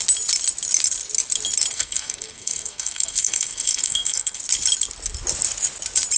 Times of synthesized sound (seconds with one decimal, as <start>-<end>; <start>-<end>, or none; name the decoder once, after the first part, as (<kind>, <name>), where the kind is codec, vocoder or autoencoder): 1.7-4.4 (codec, SNAC)